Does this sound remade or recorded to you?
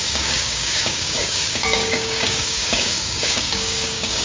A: remade